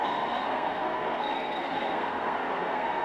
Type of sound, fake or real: fake